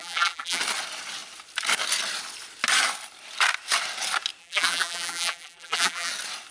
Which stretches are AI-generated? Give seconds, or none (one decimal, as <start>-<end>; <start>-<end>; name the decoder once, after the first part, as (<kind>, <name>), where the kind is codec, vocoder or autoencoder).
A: 0.0-0.6 (vocoder, BigVGAN v2); 4.4-6.1